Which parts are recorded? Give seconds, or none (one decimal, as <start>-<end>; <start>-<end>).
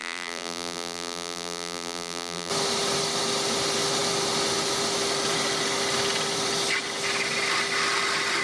2.5-8.4